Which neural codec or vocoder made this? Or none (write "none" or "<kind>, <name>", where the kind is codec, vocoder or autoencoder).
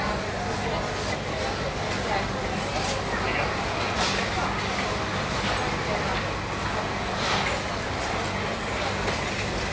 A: none